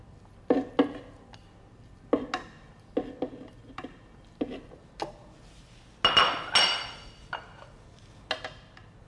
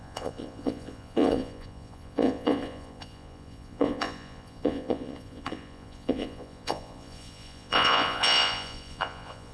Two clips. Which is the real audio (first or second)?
first